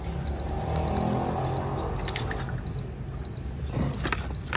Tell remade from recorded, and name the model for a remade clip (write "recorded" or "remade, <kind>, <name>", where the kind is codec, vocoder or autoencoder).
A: recorded